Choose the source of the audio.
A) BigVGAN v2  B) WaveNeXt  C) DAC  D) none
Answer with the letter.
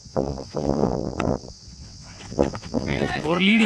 B